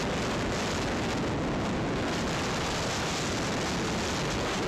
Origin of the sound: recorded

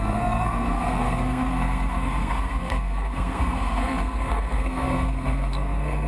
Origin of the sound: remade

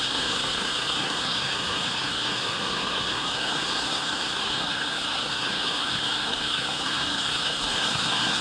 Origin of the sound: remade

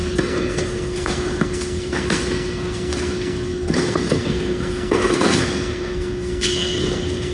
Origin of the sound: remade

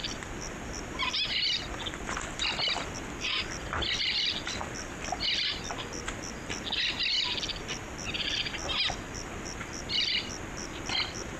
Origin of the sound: recorded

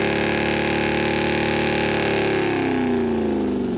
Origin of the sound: recorded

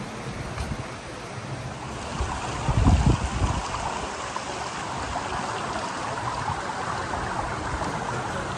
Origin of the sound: recorded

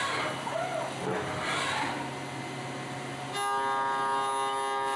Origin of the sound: recorded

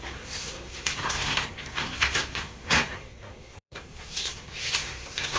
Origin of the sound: remade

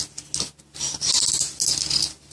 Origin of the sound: recorded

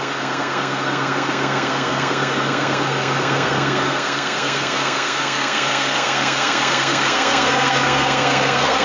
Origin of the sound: remade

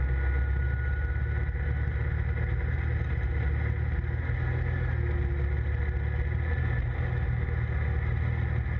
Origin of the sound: recorded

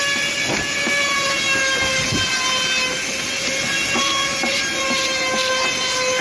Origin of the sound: recorded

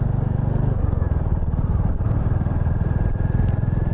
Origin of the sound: recorded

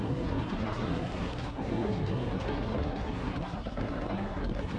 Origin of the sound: remade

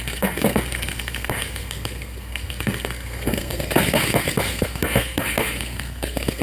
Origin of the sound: remade